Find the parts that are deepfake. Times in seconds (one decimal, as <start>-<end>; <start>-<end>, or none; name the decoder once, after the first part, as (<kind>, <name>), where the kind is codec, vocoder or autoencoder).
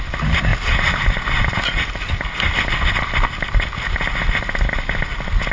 none